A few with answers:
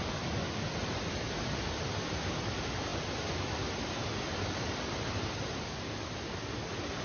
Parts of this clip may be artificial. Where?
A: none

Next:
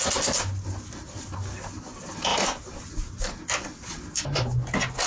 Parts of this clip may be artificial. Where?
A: 2.3-2.8 (vocoder, BigVGAN v2)

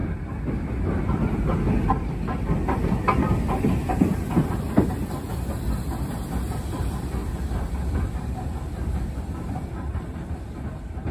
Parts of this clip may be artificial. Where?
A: 7.2-11.1 (vocoder, BigVGAN v2)

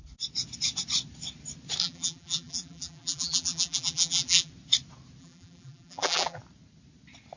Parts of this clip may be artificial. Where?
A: 1.8-4.5 (vocoder, BigVGAN v2); 5.2-6.4

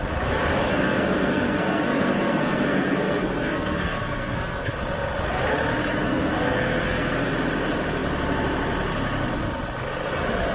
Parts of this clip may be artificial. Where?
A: 0.7-4.7 (codec, SNAC); 5.9-7.3

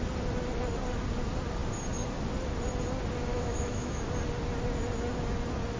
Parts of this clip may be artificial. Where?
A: 3.3-4.0 (autoencoder, DAC-VAE)